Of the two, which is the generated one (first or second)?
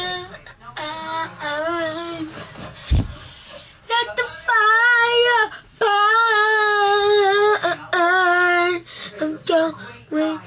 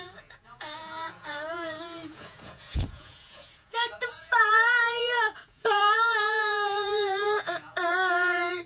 second